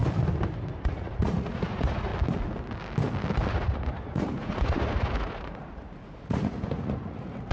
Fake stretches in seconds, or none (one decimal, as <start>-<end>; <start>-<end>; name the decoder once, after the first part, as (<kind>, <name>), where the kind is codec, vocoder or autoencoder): 0.8-2.1 (vocoder, Vocos); 3.5-7.5